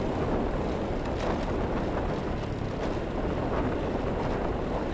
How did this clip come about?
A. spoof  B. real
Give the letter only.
B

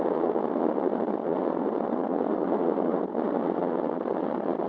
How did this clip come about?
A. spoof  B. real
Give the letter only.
A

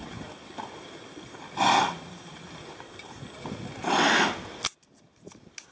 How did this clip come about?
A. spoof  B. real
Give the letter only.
B